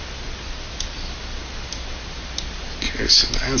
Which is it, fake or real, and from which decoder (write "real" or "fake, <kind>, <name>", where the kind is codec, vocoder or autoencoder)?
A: real